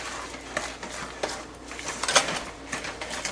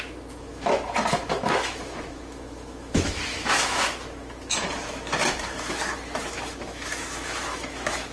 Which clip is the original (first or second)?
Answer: first